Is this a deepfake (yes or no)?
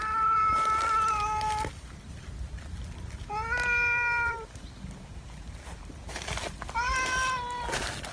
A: no